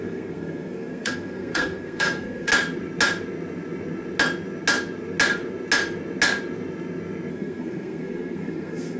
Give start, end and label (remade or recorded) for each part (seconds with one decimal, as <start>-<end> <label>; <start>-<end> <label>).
0.0-2.5 remade; 2.5-7.3 recorded; 7.3-9.0 remade